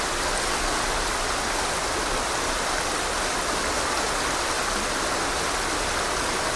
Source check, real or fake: real